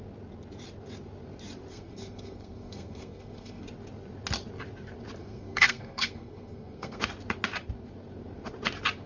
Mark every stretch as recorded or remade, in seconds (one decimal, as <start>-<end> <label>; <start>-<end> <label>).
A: 0.0-1.7 recorded; 1.7-3.6 remade; 3.6-5.2 recorded; 5.2-7.0 remade; 7.0-9.1 recorded